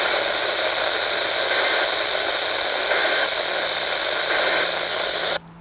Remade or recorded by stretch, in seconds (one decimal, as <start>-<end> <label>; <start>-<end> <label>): 0.0-5.6 recorded